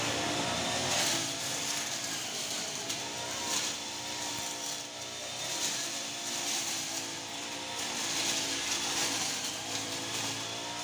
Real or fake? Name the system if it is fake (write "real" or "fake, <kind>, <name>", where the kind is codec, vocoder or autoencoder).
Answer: fake, vocoder, BigVGAN v2